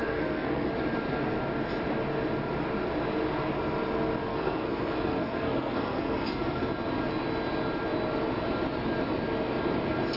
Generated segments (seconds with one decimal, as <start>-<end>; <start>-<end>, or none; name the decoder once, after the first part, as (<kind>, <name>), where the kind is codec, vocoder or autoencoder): 0.0-0.7 (codec, SNAC); 4.3-6.7